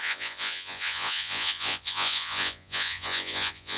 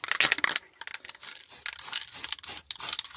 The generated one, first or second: first